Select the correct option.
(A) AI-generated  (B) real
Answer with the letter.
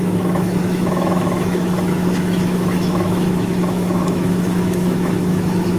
A